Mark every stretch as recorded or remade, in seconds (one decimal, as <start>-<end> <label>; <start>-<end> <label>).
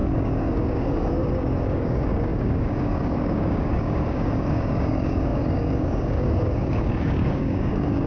0.0-8.1 remade